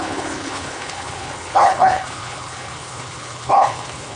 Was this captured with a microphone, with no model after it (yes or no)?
no